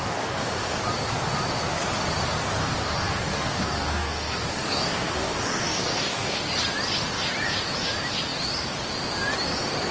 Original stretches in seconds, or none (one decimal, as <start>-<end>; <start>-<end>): 0.8-2.6; 6.4-9.9